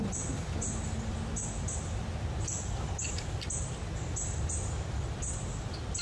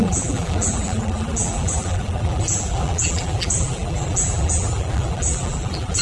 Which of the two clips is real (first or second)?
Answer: first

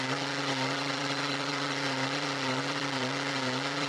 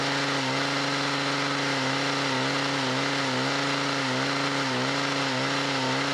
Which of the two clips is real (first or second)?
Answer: second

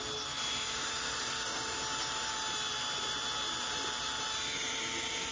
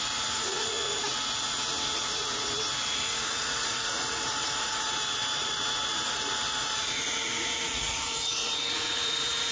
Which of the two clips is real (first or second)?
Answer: first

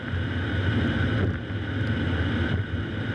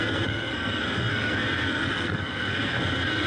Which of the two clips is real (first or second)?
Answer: first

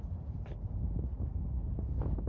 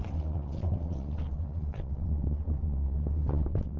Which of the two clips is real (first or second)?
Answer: first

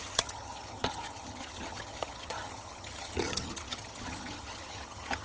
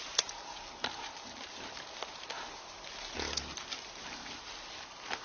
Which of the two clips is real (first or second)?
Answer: second